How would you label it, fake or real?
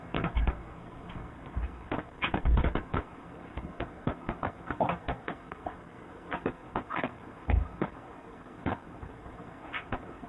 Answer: fake